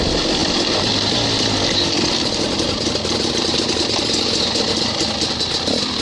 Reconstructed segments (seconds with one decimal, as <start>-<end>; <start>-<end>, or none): none